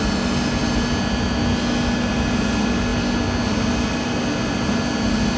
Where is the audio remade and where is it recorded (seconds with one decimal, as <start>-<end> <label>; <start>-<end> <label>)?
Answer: 0.0-5.4 recorded